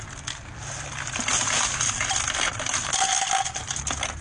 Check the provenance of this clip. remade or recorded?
recorded